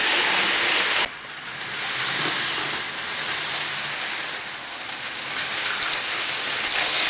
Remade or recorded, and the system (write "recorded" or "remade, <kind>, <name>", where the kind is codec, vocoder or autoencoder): recorded